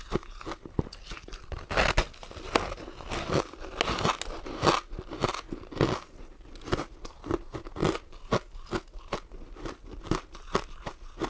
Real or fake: real